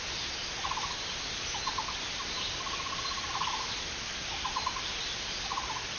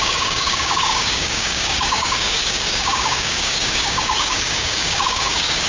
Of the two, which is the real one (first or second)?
first